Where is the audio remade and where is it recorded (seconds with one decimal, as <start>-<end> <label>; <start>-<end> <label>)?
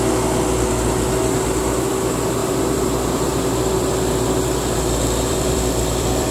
0.0-2.4 recorded; 2.4-6.3 remade